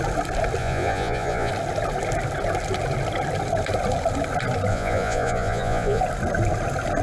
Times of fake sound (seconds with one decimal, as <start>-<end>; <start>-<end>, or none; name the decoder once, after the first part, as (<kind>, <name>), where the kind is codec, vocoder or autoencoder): 0.6-1.5 (vocoder, Vocos); 4.7-6.0